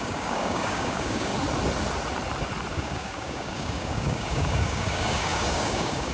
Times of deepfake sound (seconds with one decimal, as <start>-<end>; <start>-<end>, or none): 0.0-1.3; 2.7-6.1

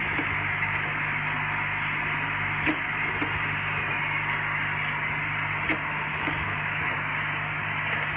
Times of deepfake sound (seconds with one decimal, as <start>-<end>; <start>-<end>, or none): 6.1-6.8

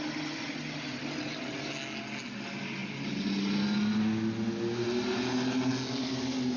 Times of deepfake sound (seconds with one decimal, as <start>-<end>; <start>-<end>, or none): 1.0-1.7

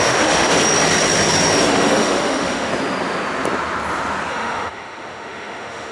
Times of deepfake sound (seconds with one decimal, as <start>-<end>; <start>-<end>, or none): 0.0-0.5; 1.7-2.7; 4.3-5.9

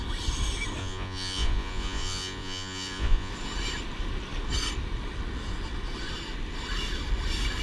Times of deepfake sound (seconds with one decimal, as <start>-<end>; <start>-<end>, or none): 0.8-3.3

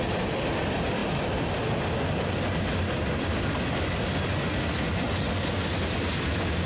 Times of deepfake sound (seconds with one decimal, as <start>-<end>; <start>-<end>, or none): none